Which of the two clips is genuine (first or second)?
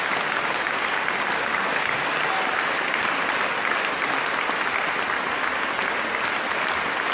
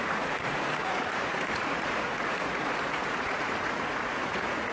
first